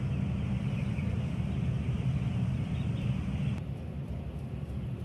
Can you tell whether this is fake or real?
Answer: real